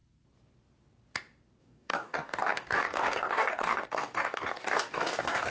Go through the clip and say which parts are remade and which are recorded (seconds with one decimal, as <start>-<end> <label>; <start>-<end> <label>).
0.0-1.6 recorded; 1.6-5.5 remade